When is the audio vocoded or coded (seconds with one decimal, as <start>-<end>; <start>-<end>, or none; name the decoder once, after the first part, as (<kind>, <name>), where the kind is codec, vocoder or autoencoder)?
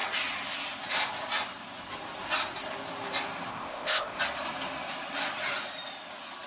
3.5-4.2 (codec, ZipCodec)